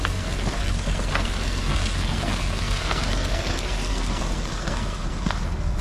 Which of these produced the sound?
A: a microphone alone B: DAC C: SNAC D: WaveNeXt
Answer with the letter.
C